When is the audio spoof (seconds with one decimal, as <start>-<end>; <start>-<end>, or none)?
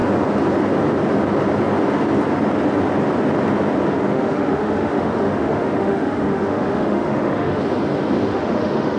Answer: 4.1-7.6; 8.3-9.0